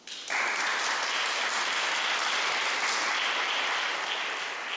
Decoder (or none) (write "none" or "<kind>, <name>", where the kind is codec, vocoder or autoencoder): none